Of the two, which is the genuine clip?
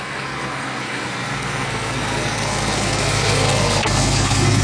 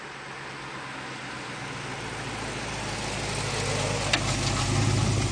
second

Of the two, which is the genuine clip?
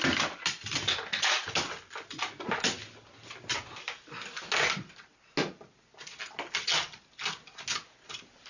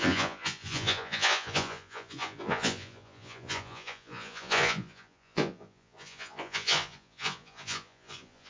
first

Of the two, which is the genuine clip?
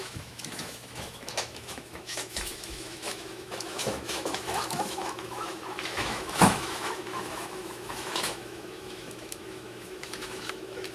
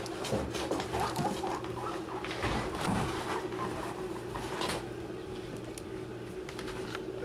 second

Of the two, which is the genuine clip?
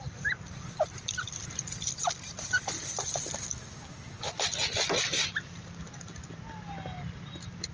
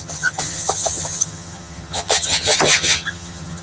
first